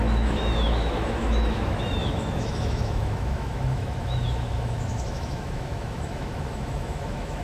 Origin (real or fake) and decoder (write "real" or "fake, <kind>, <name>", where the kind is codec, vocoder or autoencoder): fake, autoencoder, DAC-VAE